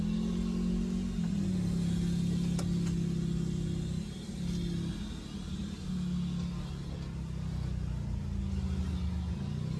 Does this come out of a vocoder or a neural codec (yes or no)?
no